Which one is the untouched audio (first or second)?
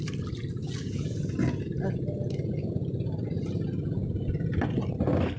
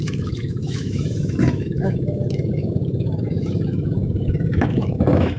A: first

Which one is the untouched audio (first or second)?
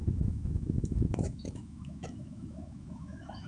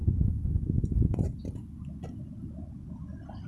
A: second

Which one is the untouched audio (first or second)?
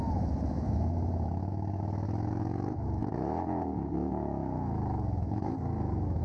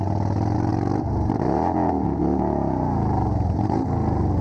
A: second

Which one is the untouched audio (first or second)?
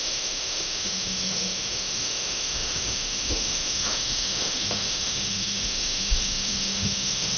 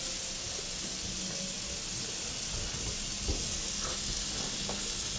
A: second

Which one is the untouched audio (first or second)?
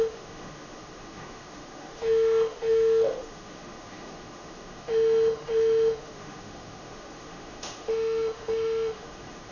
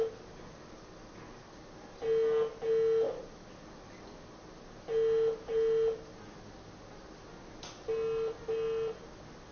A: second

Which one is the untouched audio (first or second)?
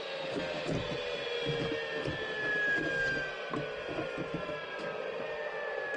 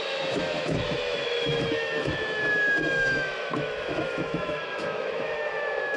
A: first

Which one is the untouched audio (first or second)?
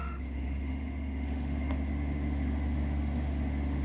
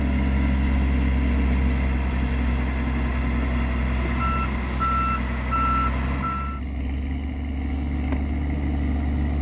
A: second